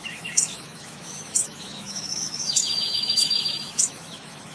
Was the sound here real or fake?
fake